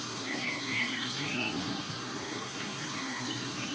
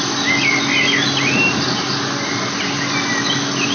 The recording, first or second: second